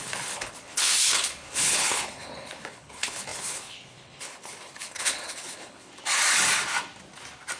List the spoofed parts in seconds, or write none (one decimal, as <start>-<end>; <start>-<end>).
0.0-5.9